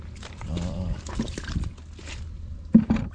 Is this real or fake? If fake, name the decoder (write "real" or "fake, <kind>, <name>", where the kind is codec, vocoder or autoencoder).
real